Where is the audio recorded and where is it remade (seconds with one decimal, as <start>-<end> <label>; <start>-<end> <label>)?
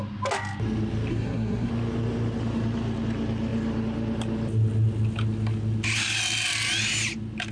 0.0-1.1 recorded; 1.1-1.7 remade; 1.7-7.5 recorded